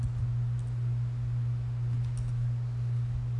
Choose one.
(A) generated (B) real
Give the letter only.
B